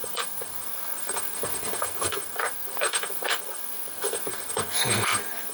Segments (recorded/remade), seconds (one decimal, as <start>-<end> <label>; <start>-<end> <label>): 0.0-5.5 remade